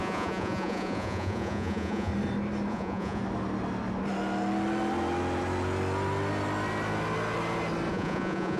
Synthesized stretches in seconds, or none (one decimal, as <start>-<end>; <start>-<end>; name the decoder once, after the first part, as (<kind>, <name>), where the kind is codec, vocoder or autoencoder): 0.0-2.1 (vocoder, Vocos); 2.7-3.2; 7.9-8.6